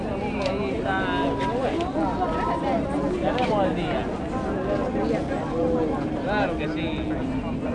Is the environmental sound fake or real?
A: real